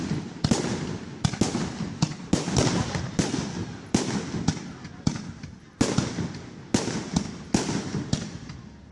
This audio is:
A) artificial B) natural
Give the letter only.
B